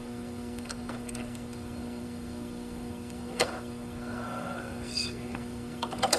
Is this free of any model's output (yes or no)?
no